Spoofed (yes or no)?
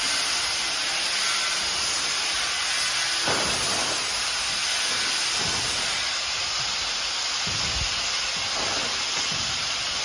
no